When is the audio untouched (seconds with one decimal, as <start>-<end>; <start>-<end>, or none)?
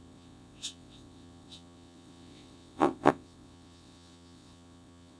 none